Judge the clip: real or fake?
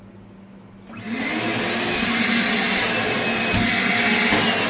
real